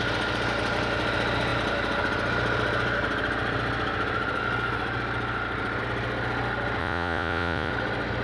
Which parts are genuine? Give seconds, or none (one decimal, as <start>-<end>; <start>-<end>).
0.0-6.8; 7.7-8.2